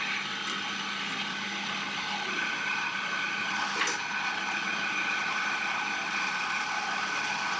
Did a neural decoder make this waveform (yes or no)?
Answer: no